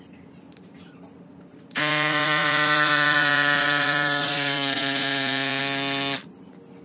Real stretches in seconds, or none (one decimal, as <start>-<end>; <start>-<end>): 0.0-1.5; 5.6-6.8